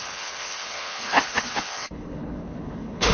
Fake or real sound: fake